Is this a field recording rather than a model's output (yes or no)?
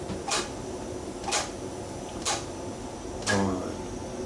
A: yes